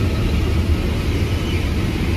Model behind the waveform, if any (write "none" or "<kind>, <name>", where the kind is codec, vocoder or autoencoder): none